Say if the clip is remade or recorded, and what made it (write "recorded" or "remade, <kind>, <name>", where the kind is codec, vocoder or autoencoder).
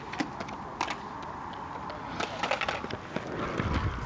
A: recorded